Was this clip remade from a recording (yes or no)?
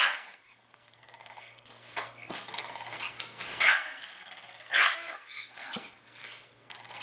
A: yes